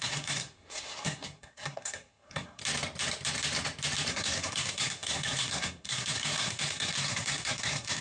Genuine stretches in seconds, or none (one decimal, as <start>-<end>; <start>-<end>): 2.6-4.1